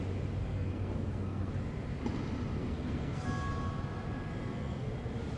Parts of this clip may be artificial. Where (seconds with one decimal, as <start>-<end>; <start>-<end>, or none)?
0.4-1.5; 2.6-3.2; 4.4-4.9